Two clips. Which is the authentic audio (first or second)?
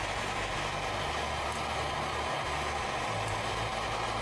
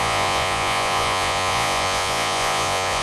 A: first